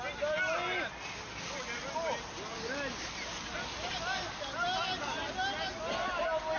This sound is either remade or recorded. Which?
recorded